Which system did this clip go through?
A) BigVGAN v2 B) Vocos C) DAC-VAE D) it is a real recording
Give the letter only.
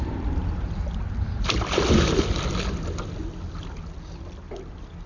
D